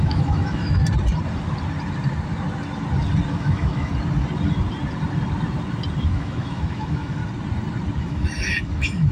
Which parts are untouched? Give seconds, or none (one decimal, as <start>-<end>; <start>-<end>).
0.8-3.3; 3.9-6.1; 7.2-8.0